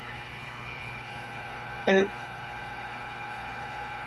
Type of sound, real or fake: fake